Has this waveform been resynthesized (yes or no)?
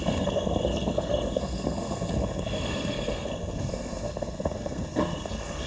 yes